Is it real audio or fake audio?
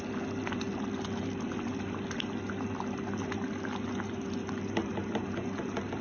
real